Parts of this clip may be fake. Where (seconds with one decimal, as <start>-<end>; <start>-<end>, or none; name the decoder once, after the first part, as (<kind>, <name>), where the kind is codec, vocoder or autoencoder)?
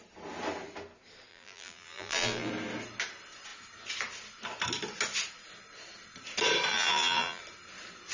1.3-2.5 (vocoder, BigVGAN v2); 6.7-7.4